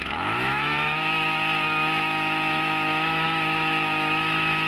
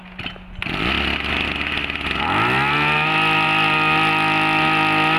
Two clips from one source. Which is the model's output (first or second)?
first